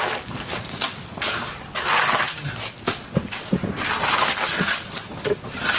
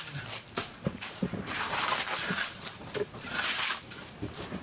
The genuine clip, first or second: first